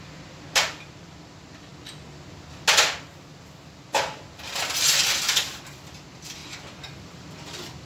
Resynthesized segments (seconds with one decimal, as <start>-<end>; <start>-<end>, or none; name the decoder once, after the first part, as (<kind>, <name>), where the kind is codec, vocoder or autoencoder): 0.0-1.7 (vocoder, BigVGAN v2); 5.4-6.4; 7.0-7.9